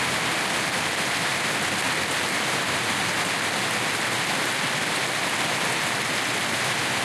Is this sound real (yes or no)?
yes